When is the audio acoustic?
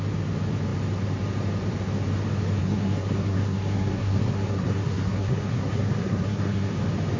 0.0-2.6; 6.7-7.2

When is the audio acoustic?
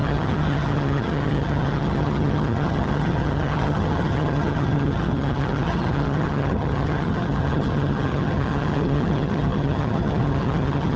none